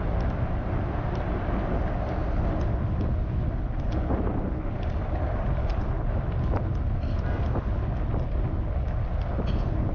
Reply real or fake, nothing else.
real